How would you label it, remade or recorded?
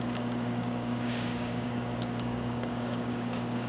remade